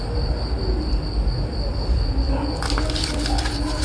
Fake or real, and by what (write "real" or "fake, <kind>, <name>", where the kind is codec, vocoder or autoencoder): real